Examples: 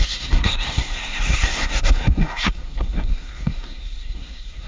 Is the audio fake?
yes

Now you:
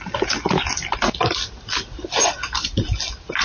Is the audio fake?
no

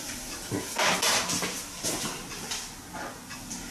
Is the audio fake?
no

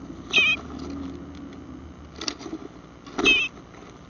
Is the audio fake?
no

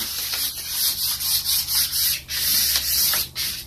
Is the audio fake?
no